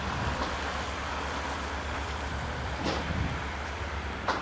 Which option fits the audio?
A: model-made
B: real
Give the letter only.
B